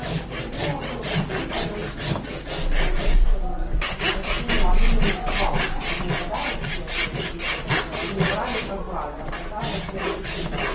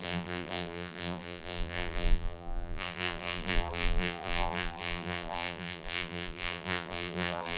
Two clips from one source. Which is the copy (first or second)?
second